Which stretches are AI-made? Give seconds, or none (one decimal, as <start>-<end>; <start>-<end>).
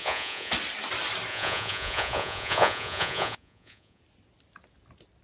0.0-0.5; 1.3-4.0